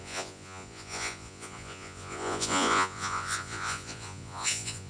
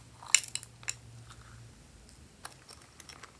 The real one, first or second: second